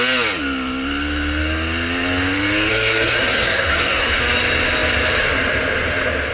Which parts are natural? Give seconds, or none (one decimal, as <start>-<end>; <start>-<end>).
0.0-2.7; 4.2-6.3